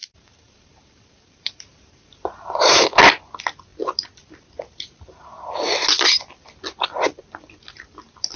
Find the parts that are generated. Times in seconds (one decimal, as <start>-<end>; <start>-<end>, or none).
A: 0.0-2.8